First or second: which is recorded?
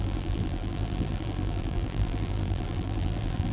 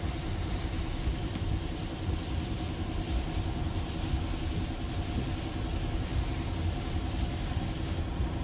second